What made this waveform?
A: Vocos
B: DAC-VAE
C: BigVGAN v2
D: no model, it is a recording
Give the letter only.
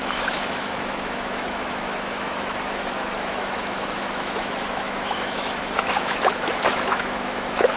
B